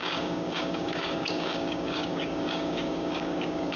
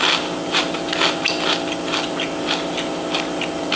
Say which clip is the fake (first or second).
first